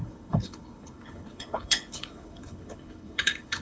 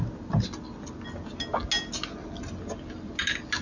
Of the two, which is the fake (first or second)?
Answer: first